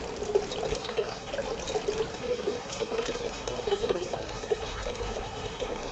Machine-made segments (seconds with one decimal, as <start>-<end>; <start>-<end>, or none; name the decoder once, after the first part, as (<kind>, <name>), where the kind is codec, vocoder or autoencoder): 0.7-1.3 (codec, SNAC); 2.1-5.9